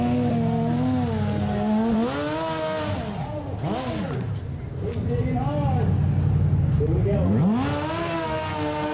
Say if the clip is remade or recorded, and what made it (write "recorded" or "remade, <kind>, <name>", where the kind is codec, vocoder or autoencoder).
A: recorded